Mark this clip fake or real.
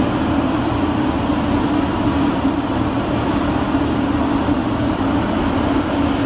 fake